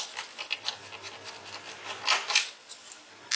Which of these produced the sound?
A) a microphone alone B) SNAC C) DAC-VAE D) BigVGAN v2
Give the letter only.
A